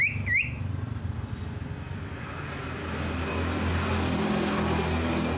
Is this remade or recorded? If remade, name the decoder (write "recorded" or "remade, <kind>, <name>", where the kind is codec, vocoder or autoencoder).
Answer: recorded